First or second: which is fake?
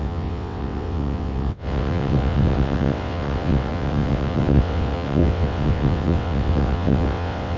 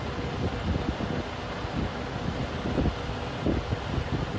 first